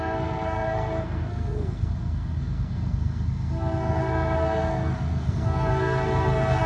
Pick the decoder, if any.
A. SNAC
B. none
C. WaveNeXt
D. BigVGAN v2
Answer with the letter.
A